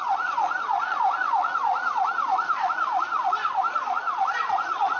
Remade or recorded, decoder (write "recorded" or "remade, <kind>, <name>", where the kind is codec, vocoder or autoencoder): remade, vocoder, Vocos